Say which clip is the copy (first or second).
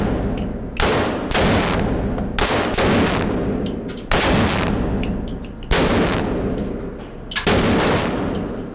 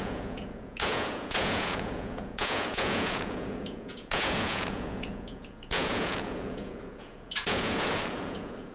second